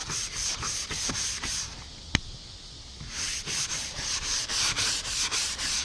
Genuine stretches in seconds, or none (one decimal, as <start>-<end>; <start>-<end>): 1.7-3.9